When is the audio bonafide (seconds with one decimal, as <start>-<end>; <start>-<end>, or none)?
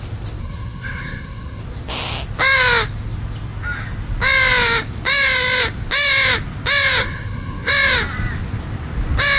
0.0-0.4; 1.6-7.0; 7.7-9.4